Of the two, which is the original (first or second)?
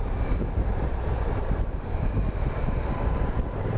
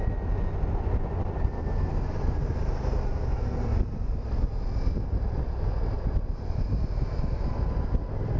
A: second